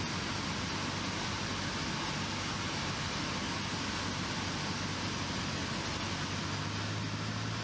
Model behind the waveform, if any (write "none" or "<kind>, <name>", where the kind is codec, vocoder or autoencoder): none